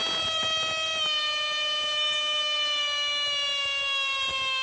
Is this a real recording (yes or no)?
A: yes